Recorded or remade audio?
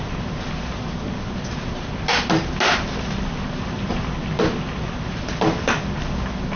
recorded